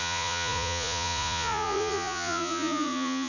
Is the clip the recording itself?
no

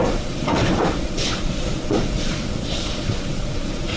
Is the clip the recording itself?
no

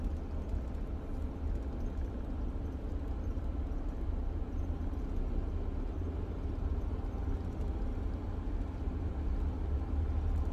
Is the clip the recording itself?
yes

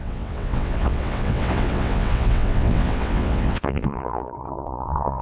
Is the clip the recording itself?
no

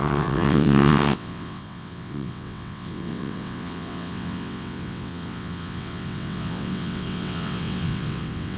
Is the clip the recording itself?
no